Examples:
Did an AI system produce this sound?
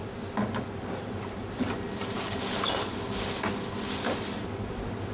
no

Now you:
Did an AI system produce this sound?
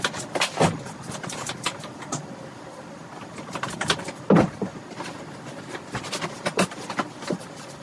no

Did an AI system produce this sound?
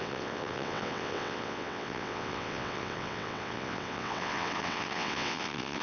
yes